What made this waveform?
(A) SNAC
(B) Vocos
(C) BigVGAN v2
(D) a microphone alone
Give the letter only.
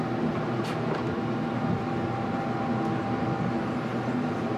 D